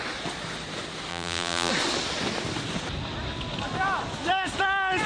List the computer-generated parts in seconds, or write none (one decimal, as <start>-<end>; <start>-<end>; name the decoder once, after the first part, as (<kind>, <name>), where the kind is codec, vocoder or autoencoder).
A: 1.1-1.7 (vocoder, BigVGAN v2)